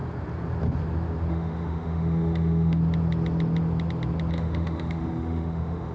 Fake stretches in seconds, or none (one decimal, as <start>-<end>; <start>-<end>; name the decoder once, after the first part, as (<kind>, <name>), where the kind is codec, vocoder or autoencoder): 1.3-2.8 (autoencoder, DAC-VAE); 4.3-5.9